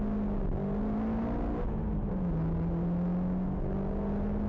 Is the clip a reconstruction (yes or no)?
no